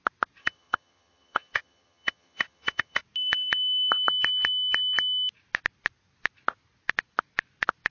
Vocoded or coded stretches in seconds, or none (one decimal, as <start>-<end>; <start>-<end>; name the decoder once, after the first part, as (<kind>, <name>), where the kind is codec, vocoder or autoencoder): 0.4-3.0 (vocoder, HiFi-GAN)